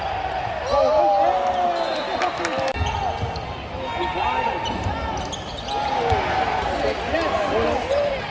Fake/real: real